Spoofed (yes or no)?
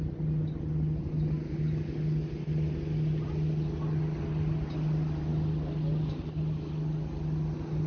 no